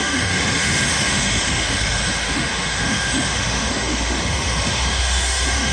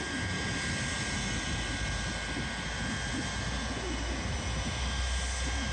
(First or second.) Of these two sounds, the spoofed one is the first